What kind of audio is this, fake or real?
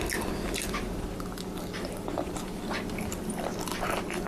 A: real